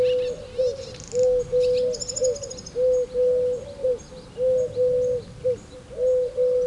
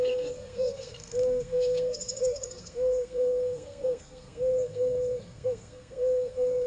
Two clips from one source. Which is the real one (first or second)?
first